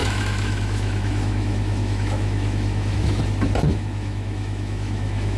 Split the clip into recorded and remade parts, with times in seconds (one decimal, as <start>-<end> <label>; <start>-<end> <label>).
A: 0.0-3.2 remade; 3.2-3.7 recorded; 3.7-5.4 remade